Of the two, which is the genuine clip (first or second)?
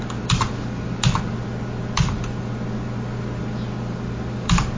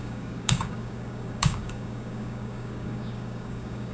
first